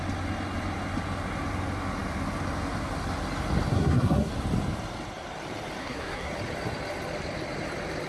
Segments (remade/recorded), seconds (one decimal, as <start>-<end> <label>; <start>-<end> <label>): 0.0-3.7 recorded; 3.7-4.3 remade; 4.3-5.8 recorded; 5.8-6.3 remade; 6.3-8.1 recorded